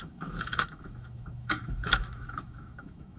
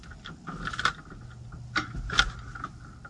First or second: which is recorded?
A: second